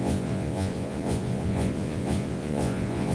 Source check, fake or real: fake